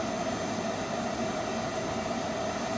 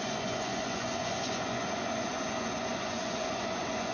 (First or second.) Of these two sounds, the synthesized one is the second